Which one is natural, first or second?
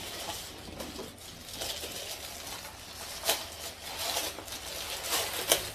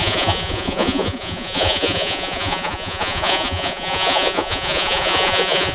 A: first